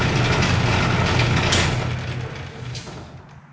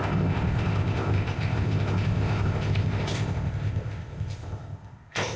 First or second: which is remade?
second